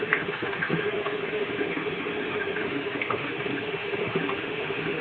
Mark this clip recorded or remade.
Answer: remade